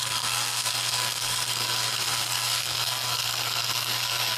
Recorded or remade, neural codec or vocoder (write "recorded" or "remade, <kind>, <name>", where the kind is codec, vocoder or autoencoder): remade, codec, SNAC